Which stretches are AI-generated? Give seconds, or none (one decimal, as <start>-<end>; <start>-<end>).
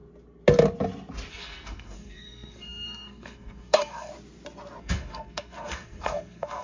1.3-4.1; 4.8-6.6